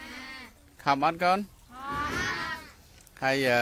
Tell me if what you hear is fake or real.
real